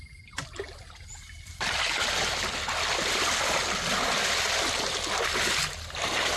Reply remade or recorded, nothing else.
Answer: recorded